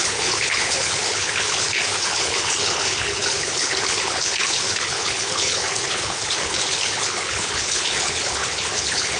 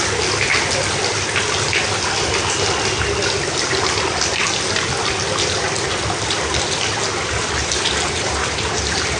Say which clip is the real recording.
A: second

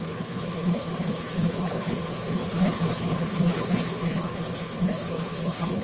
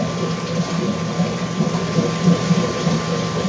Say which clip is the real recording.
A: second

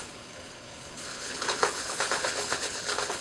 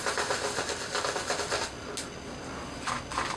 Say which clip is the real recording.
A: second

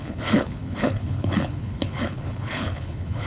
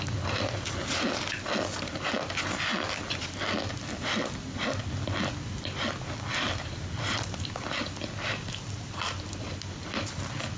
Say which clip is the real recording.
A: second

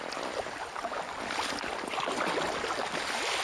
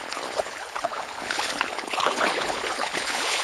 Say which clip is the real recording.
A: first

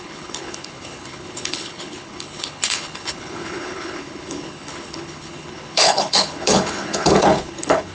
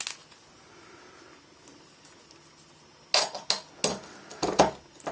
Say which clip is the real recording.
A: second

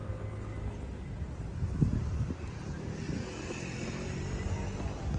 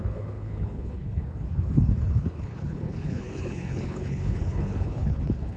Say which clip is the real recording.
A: first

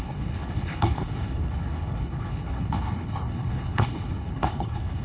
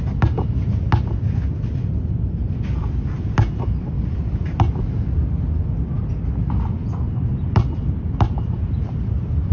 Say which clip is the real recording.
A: second